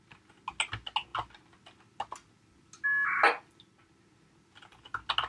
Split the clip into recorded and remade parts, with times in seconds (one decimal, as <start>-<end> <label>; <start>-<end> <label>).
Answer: 0.0-5.3 recorded